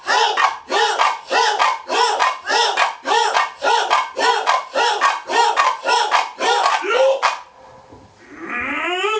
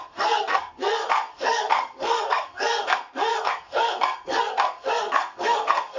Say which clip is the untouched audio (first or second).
first